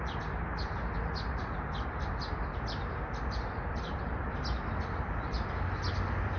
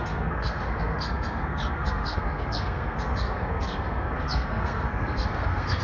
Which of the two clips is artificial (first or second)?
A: second